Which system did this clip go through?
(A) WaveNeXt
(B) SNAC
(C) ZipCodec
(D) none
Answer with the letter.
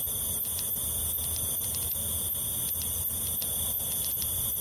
D